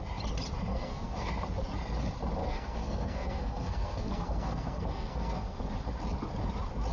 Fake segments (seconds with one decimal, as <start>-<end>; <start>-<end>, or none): 0.7-1.3; 2.4-5.6